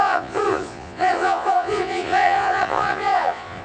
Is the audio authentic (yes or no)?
no